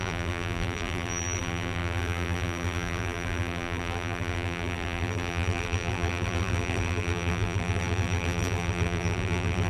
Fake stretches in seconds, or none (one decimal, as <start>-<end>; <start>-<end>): 0.0-9.7